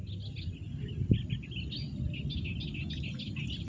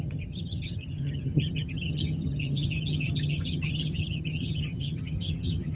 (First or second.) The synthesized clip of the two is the second